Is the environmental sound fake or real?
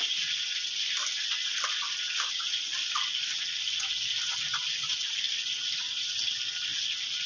real